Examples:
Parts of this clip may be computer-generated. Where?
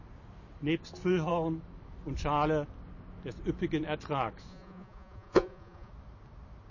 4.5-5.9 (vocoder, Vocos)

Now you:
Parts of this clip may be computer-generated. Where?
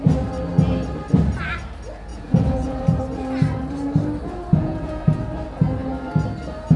2.1-3.0 (vocoder, Vocos); 4.5-5.2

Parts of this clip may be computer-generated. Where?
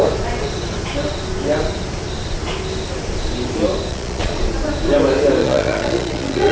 3.9-4.4 (vocoder, Vocos); 5.4-6.5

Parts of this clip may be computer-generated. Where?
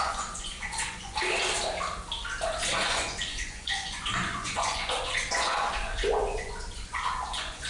0.0-1.2 (vocoder, Vocos); 2.6-7.7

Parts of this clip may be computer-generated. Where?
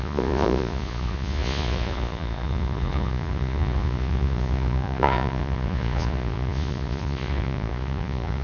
0.0-8.4 (vocoder, Vocos)